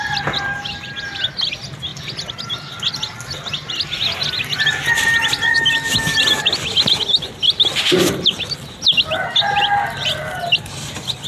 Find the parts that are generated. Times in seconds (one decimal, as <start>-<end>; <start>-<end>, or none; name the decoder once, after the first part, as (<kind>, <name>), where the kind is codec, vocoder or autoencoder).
none